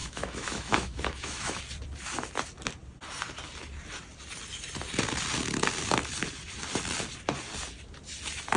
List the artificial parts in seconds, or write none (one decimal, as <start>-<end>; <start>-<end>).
0.0-1.6